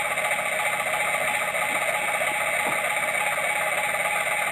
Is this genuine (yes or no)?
yes